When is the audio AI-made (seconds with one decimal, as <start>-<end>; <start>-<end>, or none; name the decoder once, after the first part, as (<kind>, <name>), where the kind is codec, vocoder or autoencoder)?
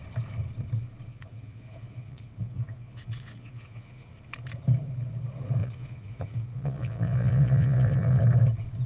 1.1-4.1 (vocoder, Vocos); 5.6-8.2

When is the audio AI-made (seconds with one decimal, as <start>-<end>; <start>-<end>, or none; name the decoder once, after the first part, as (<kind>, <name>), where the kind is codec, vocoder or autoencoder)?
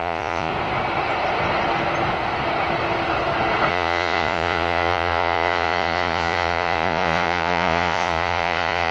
0.0-0.5 (vocoder, Vocos); 3.7-8.9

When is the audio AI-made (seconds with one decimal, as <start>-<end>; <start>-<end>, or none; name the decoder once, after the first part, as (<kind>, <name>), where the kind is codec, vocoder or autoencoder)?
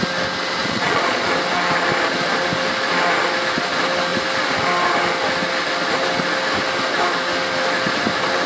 0.6-1.3 (vocoder, Vocos)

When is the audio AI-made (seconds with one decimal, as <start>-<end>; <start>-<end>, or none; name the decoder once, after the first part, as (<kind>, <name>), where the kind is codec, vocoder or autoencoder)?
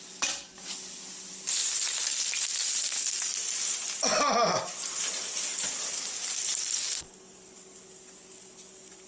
none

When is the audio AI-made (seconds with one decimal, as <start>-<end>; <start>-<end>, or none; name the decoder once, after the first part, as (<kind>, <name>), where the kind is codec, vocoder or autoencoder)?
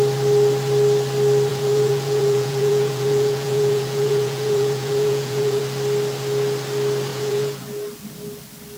1.5-5.6 (vocoder, Vocos); 7.1-7.6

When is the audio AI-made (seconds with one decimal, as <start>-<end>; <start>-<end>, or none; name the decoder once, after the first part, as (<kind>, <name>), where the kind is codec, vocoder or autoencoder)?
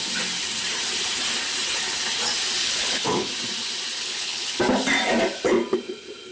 2.6-3.3 (codec, HILCodec); 4.0-4.6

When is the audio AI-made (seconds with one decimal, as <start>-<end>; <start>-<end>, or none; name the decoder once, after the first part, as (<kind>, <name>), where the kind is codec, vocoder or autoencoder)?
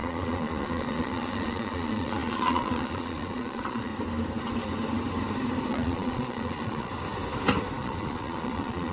0.0-3.9 (vocoder, Vocos); 5.7-6.9; 7.8-8.9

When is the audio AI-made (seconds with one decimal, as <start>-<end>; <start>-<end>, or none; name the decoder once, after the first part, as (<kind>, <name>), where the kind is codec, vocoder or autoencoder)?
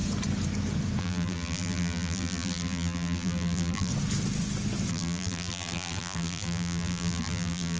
1.0-3.9 (vocoder, BigVGAN v2); 4.9-7.8